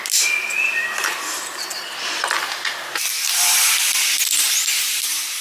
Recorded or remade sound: recorded